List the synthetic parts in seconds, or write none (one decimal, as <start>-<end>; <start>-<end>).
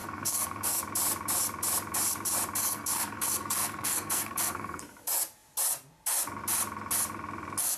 0.0-0.8; 2.6-4.8